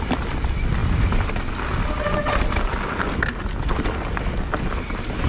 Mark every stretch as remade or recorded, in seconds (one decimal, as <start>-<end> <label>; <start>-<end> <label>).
0.0-0.8 recorded; 0.8-1.4 remade; 1.4-5.3 recorded